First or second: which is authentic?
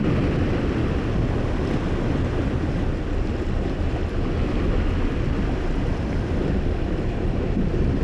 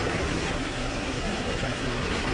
first